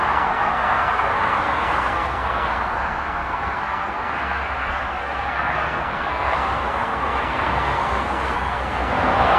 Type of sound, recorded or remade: remade